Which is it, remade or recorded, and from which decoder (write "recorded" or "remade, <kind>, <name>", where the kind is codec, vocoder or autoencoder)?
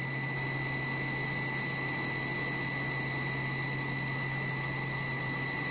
recorded